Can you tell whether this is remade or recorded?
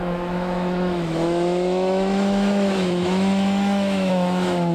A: remade